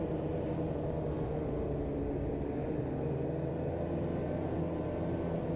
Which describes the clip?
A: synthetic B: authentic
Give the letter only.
B